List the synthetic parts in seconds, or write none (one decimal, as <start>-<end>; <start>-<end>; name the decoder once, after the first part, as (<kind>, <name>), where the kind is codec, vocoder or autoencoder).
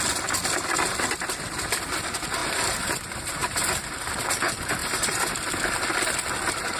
2.4-3.7 (vocoder, BigVGAN v2); 4.8-5.3